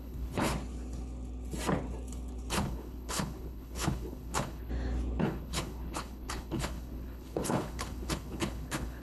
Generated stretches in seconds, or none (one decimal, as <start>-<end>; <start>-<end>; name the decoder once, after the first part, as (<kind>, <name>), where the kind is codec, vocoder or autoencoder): 0.0-0.5 (codec, HILCodec); 2.5-4.7; 5.2-9.0